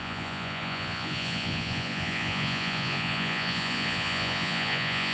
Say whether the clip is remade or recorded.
remade